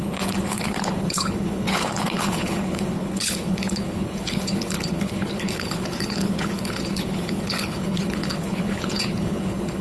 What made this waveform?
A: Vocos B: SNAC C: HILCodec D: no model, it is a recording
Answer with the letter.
C